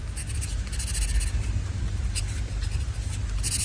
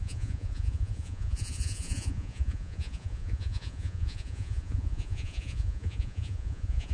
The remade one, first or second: second